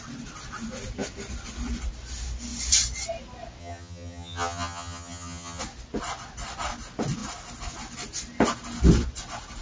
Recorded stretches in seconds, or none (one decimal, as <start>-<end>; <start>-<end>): 0.0-3.6; 5.6-9.6